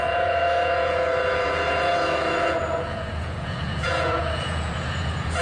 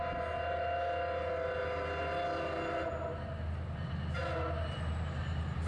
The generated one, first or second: first